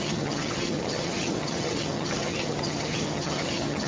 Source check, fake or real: fake